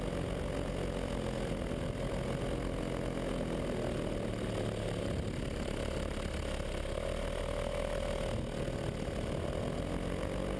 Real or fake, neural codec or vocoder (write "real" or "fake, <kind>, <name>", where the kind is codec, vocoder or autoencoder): real